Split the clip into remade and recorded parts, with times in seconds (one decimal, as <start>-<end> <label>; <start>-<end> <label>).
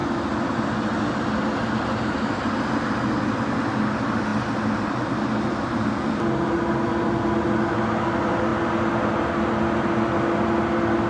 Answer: 0.0-11.1 recorded